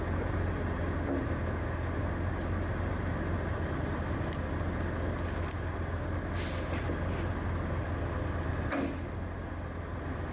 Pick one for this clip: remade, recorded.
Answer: recorded